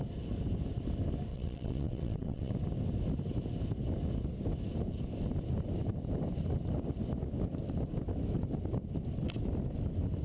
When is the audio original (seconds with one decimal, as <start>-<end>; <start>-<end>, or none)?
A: 0.0-1.3; 2.5-10.2